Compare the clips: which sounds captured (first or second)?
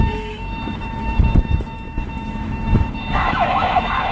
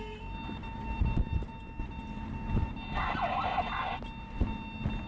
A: second